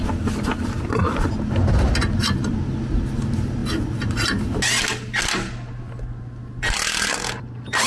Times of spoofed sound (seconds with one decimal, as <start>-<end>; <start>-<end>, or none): none